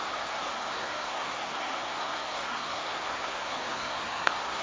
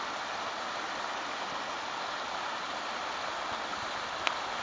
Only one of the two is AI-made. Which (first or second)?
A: first